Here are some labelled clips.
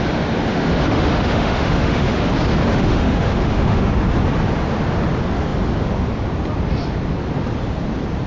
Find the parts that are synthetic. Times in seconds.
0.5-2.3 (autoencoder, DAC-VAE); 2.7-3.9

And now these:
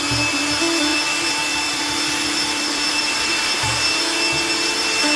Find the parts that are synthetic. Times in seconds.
0.9-4.0 (vocoder, BigVGAN v2)